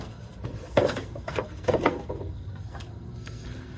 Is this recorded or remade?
remade